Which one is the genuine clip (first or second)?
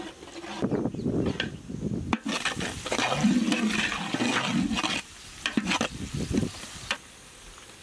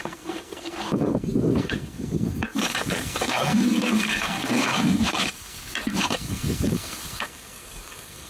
first